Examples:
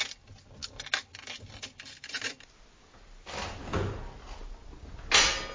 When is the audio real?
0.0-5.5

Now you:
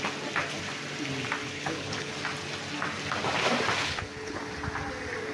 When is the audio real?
0.0-1.4; 2.1-3.8; 4.4-5.3

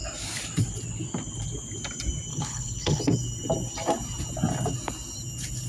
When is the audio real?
0.0-2.3; 3.0-5.7

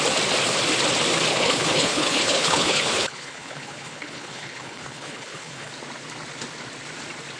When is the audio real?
0.0-1.3; 5.7-7.4